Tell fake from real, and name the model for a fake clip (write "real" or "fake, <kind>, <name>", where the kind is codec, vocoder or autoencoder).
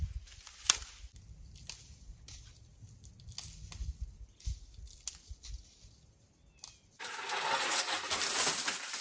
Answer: real